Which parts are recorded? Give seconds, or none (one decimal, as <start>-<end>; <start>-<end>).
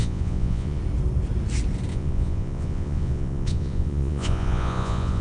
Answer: 0.8-1.9